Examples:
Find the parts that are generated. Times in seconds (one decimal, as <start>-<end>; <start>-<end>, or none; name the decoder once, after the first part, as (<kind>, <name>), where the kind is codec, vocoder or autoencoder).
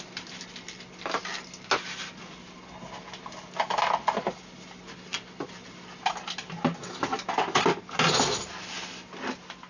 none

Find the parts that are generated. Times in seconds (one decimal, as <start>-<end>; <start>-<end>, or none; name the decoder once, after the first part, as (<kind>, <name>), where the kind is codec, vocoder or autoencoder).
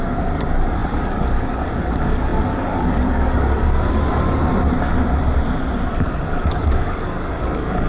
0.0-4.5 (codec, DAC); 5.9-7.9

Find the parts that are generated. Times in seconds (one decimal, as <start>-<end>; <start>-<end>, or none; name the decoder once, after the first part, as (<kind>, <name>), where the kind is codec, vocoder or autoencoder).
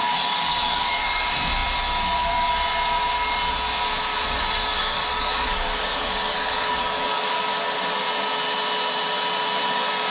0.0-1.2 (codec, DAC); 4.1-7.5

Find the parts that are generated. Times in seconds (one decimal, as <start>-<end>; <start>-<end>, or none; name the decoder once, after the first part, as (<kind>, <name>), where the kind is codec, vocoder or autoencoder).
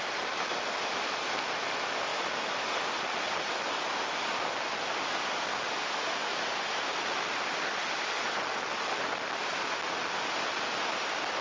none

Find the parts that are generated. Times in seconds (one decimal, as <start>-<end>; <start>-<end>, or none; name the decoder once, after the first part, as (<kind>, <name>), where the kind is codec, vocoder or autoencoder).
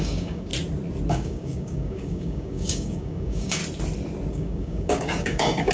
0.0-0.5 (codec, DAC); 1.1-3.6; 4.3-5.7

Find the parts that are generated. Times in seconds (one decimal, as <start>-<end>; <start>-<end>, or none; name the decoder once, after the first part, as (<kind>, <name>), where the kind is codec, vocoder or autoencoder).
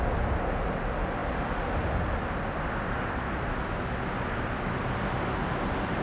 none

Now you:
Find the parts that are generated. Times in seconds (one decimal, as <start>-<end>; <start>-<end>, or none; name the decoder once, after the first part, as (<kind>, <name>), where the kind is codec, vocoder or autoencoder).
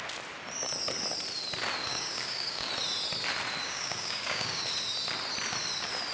1.9-2.7 (codec, DAC); 3.6-4.6